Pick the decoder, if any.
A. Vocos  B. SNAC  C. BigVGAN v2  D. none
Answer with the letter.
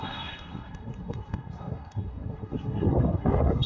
B